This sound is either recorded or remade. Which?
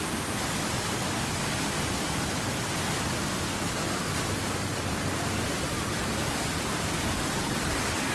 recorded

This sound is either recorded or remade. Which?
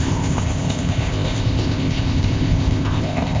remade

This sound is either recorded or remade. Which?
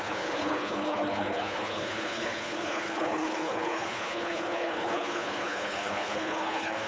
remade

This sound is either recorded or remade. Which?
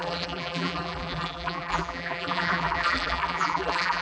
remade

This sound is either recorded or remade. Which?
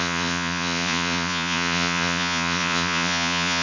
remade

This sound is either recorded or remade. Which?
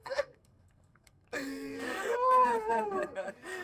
remade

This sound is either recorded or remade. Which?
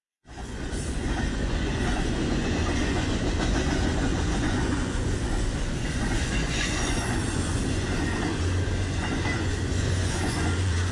remade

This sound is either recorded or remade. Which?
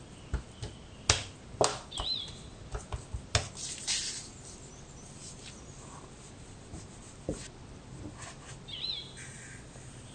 recorded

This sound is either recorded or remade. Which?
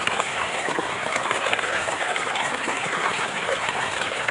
remade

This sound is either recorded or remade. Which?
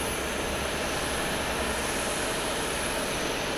recorded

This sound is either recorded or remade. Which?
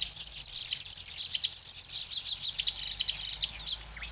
recorded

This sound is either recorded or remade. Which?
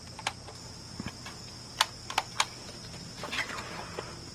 recorded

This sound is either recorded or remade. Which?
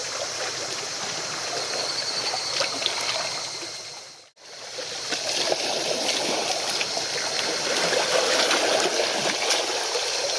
recorded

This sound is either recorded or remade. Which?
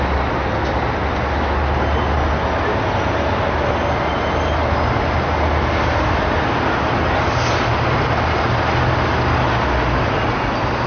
recorded